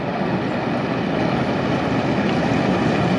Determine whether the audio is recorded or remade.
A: recorded